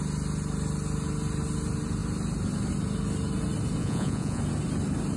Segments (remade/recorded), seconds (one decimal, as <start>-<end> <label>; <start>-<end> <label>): 0.0-3.8 recorded; 3.8-4.4 remade; 4.4-5.2 recorded